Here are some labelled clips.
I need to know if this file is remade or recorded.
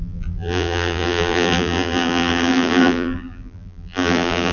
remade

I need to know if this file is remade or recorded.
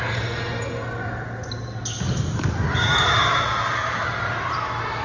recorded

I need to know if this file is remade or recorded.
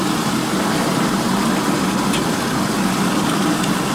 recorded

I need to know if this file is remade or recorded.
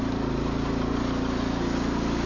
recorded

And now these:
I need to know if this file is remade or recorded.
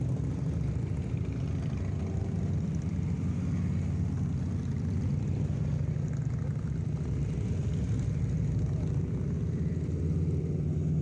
recorded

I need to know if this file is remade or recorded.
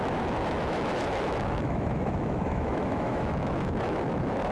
remade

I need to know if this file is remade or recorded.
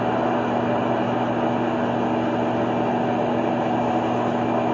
recorded